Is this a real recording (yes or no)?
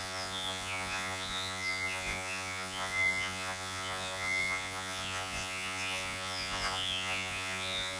no